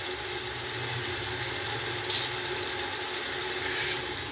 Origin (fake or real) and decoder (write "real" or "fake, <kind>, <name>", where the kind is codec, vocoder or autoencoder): real